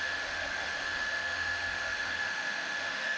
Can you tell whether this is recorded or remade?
remade